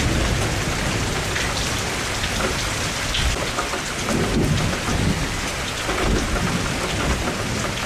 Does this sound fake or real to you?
real